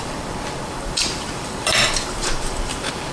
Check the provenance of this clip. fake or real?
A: fake